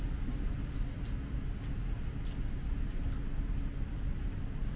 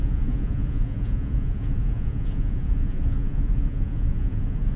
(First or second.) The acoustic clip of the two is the first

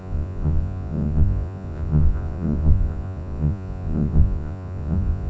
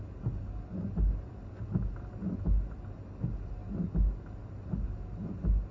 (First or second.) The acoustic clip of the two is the second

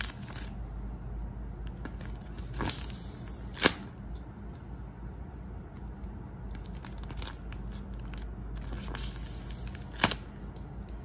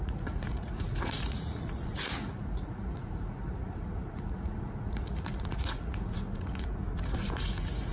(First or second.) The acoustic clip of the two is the first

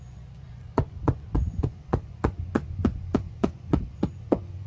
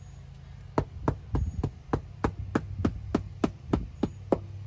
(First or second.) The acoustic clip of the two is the second